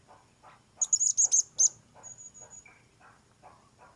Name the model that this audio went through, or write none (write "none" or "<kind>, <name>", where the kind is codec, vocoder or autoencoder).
none